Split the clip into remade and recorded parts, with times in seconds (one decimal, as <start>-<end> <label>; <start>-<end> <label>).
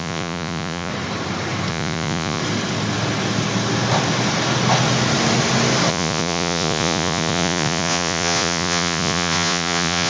0.0-0.9 remade; 0.9-1.7 recorded; 1.7-2.4 remade; 2.4-5.9 recorded; 5.9-10.1 remade